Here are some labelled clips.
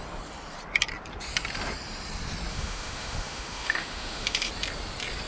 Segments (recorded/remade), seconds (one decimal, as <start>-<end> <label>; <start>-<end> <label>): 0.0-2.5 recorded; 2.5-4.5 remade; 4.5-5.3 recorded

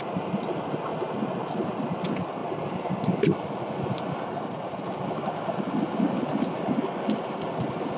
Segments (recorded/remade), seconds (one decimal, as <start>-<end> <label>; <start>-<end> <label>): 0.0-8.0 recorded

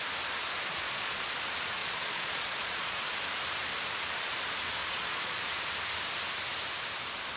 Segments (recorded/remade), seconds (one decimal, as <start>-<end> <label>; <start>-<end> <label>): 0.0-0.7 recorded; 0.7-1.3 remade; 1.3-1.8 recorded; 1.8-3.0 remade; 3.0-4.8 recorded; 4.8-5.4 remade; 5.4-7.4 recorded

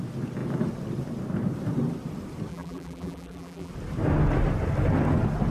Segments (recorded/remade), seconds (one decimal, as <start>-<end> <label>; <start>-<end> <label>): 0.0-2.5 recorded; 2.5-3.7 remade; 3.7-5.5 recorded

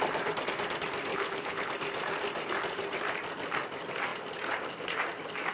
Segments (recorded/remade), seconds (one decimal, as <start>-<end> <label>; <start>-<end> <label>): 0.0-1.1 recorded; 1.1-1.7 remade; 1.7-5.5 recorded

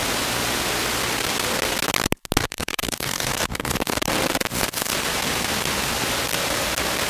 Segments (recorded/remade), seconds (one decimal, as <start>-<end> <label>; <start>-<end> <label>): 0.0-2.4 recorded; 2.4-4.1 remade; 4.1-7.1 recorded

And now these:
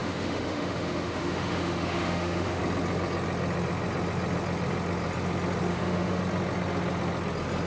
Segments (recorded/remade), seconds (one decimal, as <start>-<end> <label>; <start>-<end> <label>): 0.0-2.6 remade; 2.6-5.7 recorded; 5.7-6.2 remade; 6.2-7.7 recorded

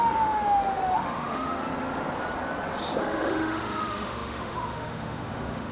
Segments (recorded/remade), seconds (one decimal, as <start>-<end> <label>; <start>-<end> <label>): 0.0-1.6 remade; 1.6-3.0 recorded; 3.0-5.7 remade